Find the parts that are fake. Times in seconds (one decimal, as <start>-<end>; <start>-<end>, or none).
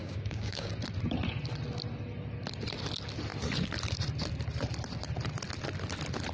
0.0-0.7